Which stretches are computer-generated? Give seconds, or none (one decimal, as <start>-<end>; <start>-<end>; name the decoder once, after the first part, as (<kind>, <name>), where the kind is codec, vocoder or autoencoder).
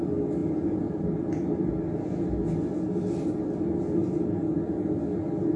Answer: none